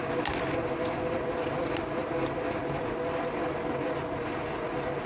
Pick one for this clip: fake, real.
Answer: real